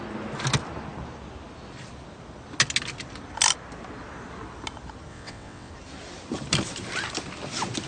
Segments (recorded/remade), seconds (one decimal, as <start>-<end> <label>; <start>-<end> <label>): 0.0-5.1 recorded; 5.1-5.7 remade; 5.7-7.9 recorded